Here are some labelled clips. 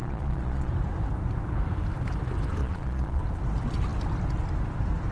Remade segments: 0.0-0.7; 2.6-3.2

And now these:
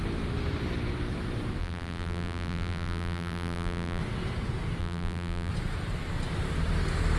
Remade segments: 1.6-4.0; 4.8-5.5

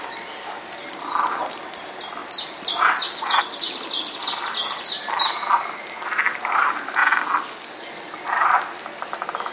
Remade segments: none

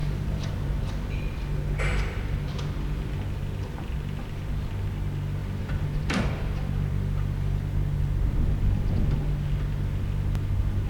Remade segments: 0.0-0.5; 1.9-3.1; 5.4-7.6

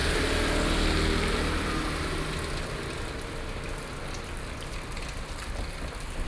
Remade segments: none

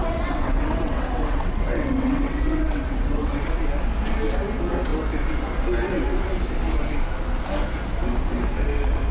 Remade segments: 0.0-3.6

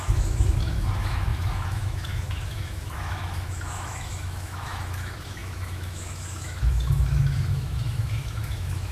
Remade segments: 0.0-8.9